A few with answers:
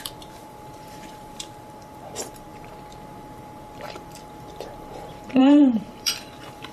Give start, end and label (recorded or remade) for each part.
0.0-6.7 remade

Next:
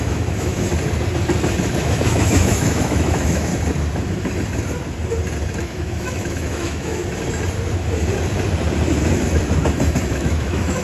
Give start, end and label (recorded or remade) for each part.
0.0-0.7 remade; 0.7-1.8 recorded; 1.8-3.5 remade; 3.5-5.6 recorded; 5.6-7.0 remade; 7.0-10.1 recorded; 10.1-10.8 remade

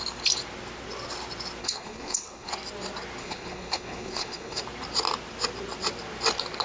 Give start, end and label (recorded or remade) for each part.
0.0-1.6 recorded; 1.6-2.5 remade; 2.5-3.2 recorded; 3.2-4.6 remade; 4.6-6.6 recorded